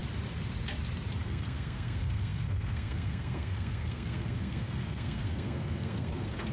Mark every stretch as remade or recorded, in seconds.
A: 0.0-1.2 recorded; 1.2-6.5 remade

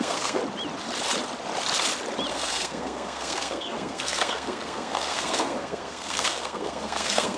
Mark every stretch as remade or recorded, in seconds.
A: 0.0-0.4 remade; 0.4-2.3 recorded; 2.3-7.4 remade